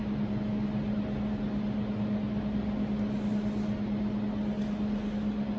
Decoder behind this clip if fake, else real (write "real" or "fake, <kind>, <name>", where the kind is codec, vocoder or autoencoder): real